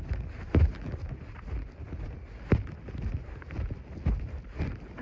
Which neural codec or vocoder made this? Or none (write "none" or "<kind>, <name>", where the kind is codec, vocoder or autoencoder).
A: none